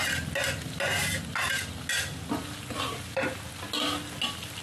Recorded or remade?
recorded